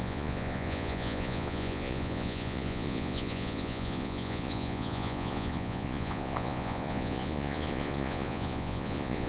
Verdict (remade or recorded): remade